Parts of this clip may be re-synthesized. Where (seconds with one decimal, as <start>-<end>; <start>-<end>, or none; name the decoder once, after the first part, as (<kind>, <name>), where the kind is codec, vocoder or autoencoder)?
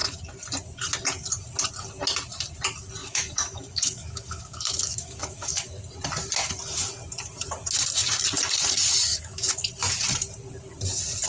3.0-5.8 (autoencoder, DAC-VAE); 9.1-9.7